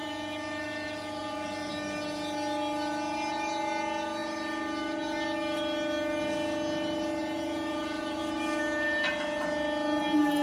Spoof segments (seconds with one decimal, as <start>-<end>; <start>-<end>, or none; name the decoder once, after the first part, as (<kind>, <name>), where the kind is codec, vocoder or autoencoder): 0.0-1.7 (vocoder, Vocos); 7.2-8.2